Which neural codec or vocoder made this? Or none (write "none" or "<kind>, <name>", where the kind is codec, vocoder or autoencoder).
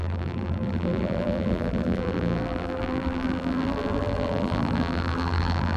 vocoder, BigVGAN v2